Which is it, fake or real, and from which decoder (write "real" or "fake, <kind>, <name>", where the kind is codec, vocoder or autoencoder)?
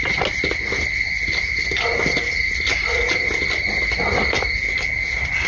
real